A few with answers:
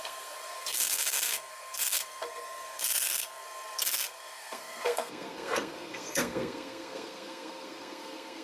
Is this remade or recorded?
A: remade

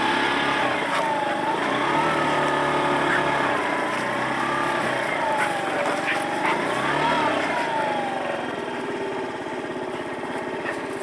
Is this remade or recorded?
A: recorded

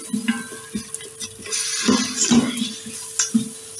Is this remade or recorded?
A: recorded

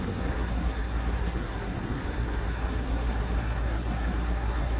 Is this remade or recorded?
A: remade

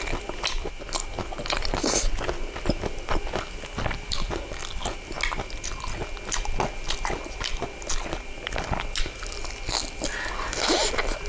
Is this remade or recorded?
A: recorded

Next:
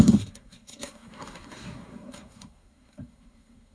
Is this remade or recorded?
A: remade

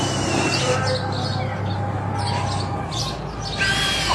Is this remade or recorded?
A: recorded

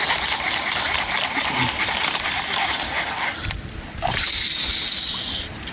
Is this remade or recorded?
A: recorded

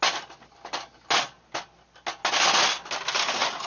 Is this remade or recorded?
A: recorded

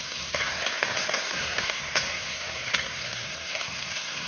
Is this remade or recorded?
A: remade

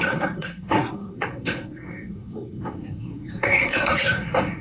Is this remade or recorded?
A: remade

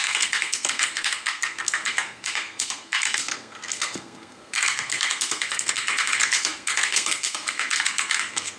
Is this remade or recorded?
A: remade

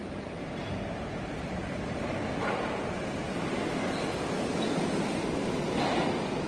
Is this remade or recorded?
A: recorded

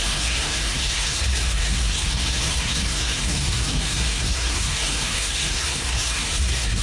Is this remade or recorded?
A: remade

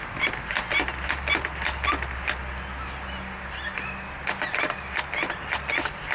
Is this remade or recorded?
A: recorded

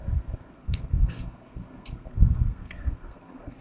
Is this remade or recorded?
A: remade